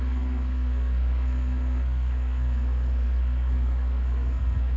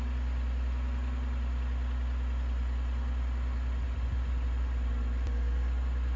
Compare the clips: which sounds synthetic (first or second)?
first